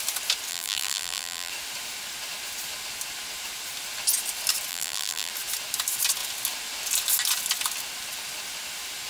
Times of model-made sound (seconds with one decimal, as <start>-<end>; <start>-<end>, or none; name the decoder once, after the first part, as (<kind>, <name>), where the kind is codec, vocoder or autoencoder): 0.5-1.5 (vocoder, BigVGAN v2); 4.7-5.3